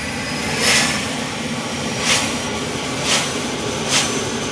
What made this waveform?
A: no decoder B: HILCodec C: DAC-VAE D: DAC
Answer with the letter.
A